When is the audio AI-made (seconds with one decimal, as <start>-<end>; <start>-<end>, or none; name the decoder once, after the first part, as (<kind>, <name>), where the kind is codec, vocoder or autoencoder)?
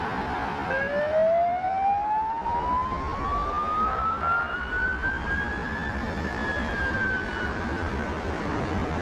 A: 3.7-9.0 (vocoder, BigVGAN v2)